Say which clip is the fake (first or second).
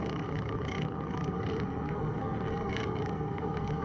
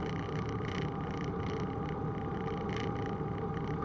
first